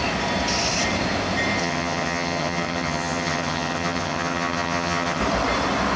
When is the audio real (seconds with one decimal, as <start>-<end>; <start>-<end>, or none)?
0.0-1.6; 5.2-6.0